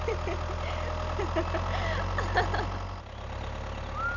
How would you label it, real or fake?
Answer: real